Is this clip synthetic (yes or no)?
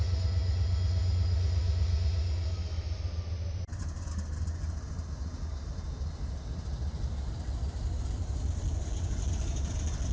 no